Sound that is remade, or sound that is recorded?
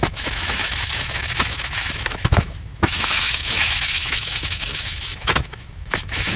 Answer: remade